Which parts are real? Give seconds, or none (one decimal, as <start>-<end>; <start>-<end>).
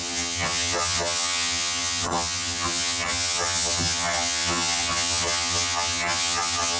none